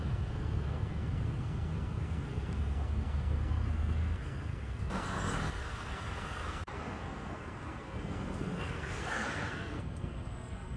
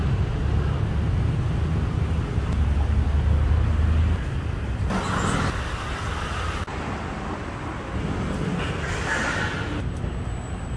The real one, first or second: second